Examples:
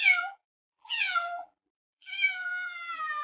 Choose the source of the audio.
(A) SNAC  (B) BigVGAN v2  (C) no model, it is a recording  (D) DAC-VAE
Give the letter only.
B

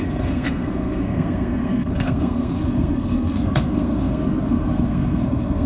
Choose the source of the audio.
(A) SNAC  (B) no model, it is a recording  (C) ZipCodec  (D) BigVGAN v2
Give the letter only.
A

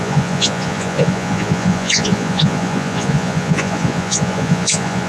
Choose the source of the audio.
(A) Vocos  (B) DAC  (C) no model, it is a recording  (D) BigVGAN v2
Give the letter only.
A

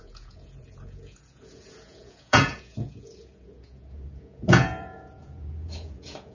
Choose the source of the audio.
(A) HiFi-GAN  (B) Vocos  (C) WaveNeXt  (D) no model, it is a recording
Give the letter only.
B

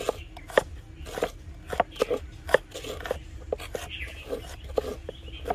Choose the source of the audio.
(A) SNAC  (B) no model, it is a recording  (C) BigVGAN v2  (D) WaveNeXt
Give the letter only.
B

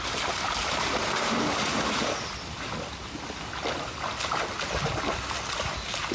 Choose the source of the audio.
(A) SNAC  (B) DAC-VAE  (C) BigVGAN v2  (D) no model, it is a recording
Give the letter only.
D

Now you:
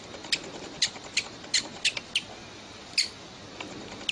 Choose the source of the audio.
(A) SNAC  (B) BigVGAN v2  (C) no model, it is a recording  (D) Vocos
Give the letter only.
C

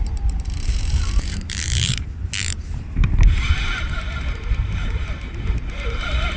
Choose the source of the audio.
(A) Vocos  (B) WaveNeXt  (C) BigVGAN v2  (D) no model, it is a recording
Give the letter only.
C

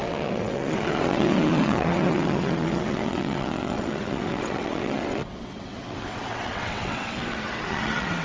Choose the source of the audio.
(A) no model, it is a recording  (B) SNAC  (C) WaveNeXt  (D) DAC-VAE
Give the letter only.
C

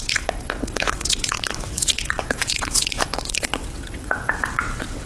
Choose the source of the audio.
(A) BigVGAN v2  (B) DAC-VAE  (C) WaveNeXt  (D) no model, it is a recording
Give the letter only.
C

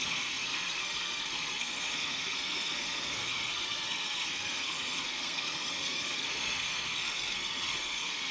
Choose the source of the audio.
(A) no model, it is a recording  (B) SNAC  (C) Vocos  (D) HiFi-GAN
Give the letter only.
B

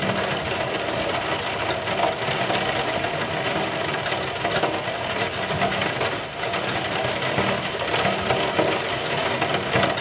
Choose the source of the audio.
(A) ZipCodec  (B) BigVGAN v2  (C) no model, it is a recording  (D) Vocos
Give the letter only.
C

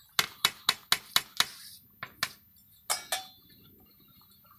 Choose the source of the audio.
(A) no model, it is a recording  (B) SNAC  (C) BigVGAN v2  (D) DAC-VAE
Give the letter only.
A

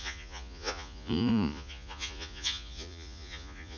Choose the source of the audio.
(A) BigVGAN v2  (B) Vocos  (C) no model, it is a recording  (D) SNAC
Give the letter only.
B